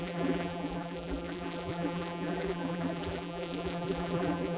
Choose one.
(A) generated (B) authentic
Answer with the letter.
A